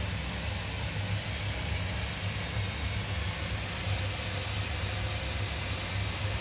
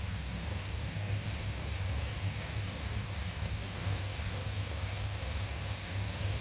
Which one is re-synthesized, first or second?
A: second